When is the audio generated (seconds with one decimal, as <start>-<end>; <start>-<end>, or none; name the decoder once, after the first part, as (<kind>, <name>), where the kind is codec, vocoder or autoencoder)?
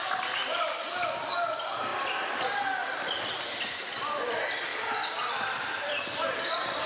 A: 0.0-1.9 (vocoder, BigVGAN v2); 3.2-4.7; 5.3-6.9